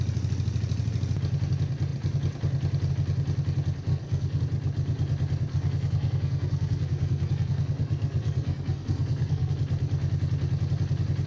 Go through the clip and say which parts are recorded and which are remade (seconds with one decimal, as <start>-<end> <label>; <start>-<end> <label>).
0.0-3.9 recorded; 3.9-4.4 remade; 4.4-5.5 recorded; 5.5-9.5 remade; 9.5-11.3 recorded